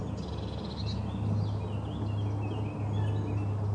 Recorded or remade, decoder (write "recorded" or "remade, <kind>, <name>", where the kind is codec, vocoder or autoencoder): recorded